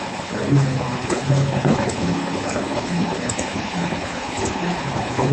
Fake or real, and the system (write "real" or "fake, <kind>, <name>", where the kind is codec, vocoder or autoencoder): fake, codec, HILCodec